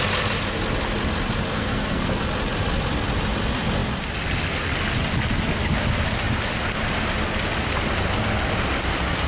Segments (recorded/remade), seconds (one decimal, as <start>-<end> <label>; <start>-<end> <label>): 0.0-1.5 recorded; 1.5-2.2 remade; 2.2-9.3 recorded